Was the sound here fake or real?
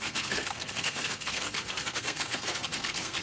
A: fake